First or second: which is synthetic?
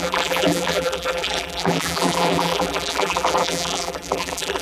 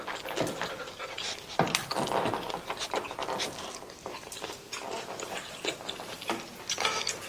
first